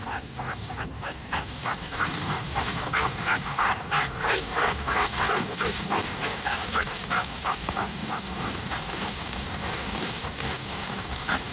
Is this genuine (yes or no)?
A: no